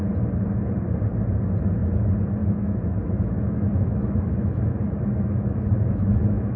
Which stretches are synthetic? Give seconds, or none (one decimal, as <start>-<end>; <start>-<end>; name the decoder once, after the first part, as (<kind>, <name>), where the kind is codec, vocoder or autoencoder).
2.4-6.6 (autoencoder, DAC-VAE)